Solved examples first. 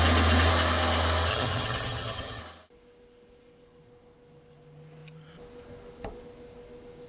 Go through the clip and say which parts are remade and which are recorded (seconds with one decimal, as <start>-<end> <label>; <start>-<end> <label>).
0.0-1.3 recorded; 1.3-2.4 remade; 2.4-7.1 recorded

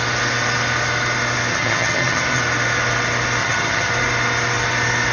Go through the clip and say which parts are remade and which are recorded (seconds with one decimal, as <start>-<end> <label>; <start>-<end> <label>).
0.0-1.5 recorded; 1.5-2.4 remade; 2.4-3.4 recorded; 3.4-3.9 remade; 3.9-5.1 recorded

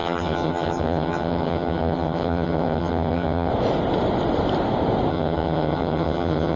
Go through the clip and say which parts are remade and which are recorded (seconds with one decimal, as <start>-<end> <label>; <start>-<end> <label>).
0.0-3.5 remade; 3.5-5.1 recorded; 5.1-6.6 remade

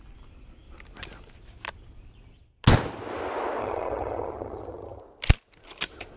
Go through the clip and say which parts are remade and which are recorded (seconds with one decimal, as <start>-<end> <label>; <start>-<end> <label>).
0.0-3.6 recorded; 3.6-5.0 remade; 5.0-6.2 recorded

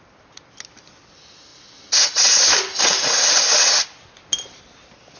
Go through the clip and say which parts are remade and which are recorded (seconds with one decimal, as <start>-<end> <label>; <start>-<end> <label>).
0.0-5.2 recorded

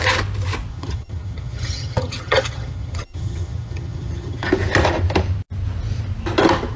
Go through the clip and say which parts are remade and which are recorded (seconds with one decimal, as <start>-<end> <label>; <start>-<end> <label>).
0.0-0.7 recorded; 0.7-4.5 remade; 4.5-6.8 recorded